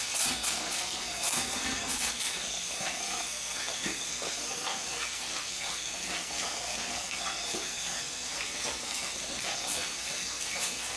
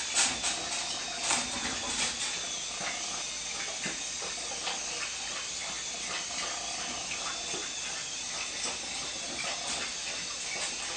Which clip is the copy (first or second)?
first